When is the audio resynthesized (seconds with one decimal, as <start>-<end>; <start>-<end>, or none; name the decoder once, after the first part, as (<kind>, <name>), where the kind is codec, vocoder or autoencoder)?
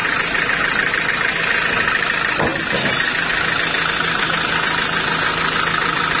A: none